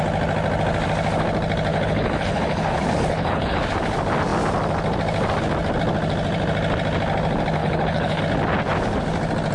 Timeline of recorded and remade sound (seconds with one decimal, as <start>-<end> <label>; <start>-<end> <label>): 0.0-1.7 recorded; 1.7-3.6 remade; 3.6-7.6 recorded; 7.6-8.2 remade; 8.2-9.5 recorded